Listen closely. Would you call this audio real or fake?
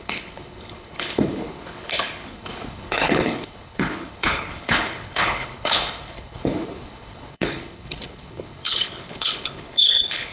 fake